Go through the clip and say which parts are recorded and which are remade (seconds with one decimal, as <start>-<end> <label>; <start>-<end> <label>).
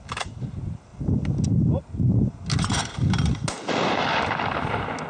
0.0-5.1 recorded